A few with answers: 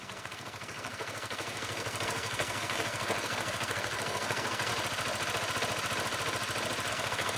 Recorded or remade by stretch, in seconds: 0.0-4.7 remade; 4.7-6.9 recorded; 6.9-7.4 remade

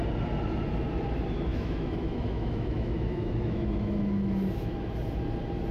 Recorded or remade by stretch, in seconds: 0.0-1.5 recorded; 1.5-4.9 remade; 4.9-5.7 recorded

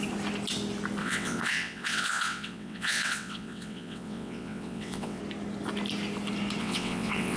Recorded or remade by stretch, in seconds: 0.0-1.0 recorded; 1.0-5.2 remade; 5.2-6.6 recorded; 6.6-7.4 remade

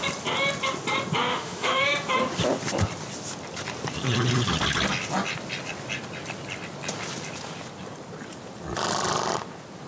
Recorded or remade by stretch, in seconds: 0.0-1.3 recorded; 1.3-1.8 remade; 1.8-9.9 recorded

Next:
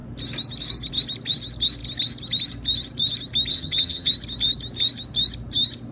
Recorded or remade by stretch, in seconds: 0.0-3.5 recorded; 3.5-4.1 remade; 4.1-5.9 recorded

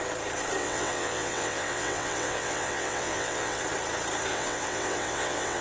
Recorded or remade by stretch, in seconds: 0.0-0.6 recorded; 0.6-3.6 remade; 3.6-4.3 recorded; 4.3-5.6 remade